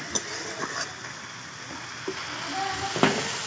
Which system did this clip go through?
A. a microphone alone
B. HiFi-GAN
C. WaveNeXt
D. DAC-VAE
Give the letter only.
A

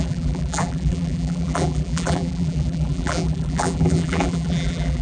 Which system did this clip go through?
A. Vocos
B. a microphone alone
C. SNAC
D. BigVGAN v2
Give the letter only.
D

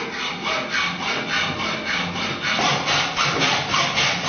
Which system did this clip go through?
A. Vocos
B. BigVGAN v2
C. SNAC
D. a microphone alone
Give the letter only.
D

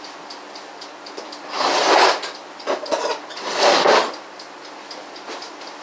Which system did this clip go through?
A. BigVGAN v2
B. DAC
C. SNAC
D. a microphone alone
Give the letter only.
D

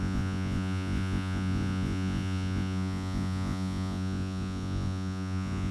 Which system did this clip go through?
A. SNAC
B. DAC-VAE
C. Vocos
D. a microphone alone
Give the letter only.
C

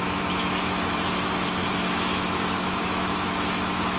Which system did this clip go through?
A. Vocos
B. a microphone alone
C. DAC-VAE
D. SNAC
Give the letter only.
C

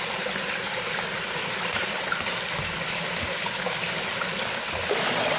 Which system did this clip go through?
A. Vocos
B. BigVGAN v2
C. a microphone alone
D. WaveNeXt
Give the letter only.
B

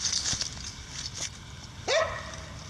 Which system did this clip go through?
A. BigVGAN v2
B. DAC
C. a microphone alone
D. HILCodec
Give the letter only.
C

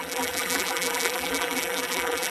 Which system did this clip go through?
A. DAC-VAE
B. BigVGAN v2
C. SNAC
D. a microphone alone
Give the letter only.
B